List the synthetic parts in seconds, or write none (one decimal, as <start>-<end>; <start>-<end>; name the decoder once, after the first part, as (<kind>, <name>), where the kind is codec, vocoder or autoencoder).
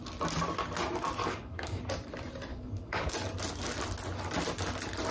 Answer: 1.2-1.8 (codec, DAC); 2.5-3.1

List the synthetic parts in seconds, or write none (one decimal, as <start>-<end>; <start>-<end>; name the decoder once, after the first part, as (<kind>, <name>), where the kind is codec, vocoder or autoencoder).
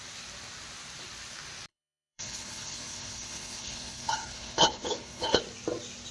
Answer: 1.7-5.4 (codec, HILCodec)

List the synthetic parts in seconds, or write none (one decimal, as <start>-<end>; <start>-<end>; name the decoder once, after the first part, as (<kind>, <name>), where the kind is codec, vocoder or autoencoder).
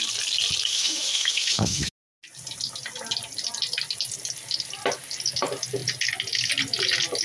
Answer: 0.7-1.9 (autoencoder, DAC-VAE)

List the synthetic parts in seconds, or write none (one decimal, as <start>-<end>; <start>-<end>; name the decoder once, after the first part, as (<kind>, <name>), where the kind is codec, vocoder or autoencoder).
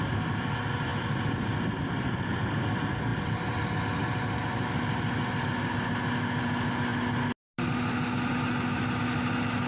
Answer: none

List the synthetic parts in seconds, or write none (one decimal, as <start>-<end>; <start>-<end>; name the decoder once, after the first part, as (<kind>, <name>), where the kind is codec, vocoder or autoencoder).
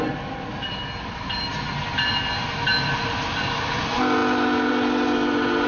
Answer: none